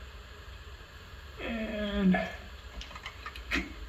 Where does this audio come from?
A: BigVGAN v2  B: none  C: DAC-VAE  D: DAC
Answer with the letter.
B